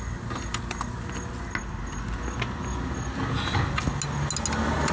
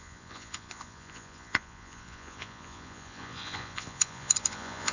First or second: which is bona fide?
first